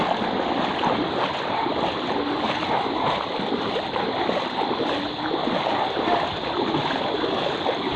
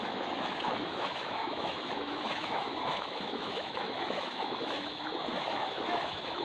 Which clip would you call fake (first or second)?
second